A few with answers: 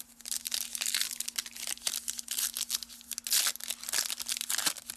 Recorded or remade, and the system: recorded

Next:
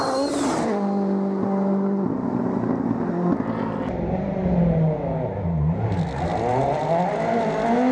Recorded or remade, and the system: recorded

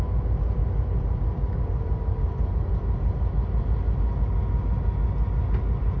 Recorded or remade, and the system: recorded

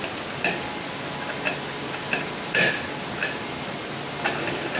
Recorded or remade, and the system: recorded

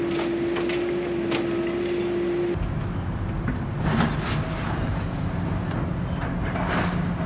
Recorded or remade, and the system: recorded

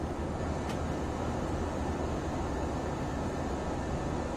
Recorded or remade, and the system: recorded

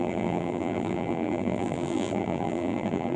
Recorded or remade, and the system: remade, vocoder, BigVGAN v2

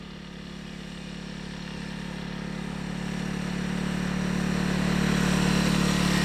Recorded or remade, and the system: recorded